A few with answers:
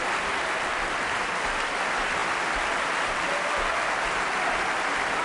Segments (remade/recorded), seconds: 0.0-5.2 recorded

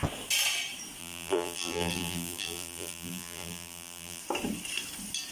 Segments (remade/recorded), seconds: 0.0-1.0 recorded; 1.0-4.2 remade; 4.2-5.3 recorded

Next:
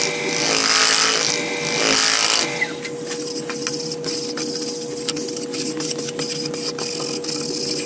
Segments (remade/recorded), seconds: 0.0-7.9 recorded

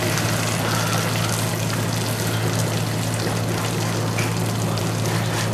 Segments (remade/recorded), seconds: 0.0-5.5 recorded